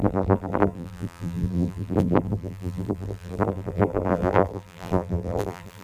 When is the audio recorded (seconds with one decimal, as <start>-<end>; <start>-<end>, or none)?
none